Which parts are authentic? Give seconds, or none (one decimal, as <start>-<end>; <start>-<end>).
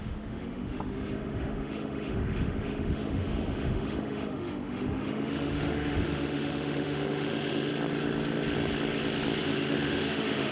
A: 7.7-9.4